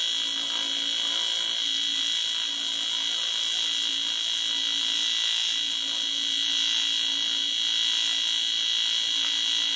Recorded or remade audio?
recorded